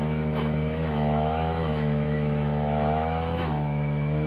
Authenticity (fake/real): fake